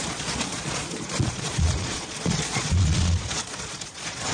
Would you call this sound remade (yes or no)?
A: yes